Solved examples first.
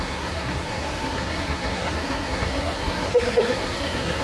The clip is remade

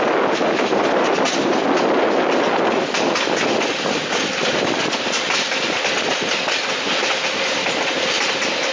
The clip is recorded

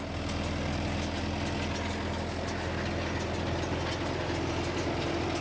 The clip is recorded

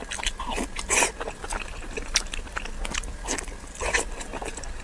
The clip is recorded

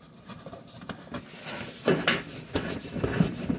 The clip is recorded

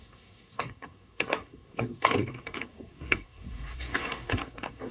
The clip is remade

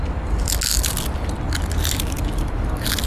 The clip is recorded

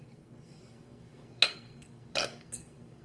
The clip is remade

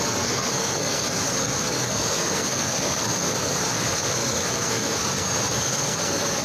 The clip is remade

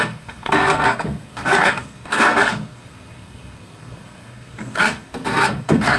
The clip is remade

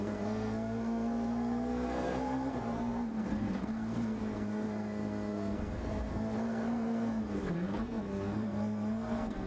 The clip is remade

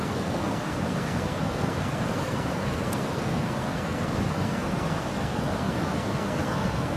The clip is remade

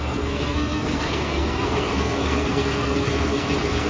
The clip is remade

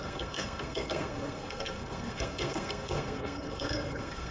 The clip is remade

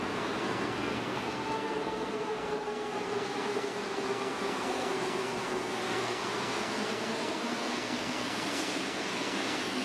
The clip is remade